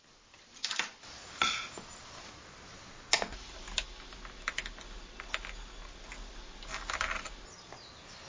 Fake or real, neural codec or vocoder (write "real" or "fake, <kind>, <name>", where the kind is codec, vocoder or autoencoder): real